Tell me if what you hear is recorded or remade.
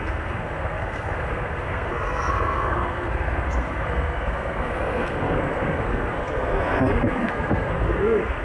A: remade